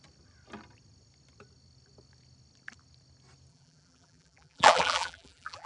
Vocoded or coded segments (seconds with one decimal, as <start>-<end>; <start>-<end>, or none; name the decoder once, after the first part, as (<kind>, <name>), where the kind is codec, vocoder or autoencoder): 3.5-5.7 (vocoder, BigVGAN v2)